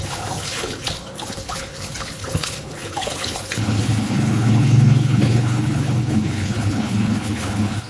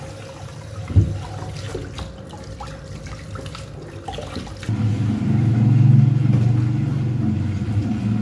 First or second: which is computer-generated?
first